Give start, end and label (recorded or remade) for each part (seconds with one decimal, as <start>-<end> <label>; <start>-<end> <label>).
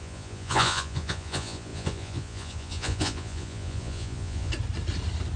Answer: 0.0-4.5 remade; 4.5-5.4 recorded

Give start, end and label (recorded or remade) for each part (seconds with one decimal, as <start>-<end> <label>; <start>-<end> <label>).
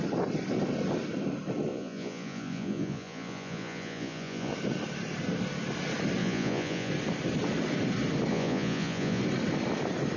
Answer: 0.0-1.7 recorded; 1.7-4.5 remade; 4.5-6.2 recorded; 6.2-6.9 remade; 6.9-8.3 recorded; 8.3-9.2 remade; 9.2-10.2 recorded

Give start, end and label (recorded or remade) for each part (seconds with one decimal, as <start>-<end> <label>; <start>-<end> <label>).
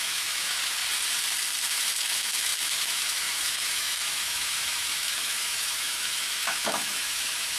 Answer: 0.0-0.8 remade; 0.8-1.7 recorded; 1.7-7.6 remade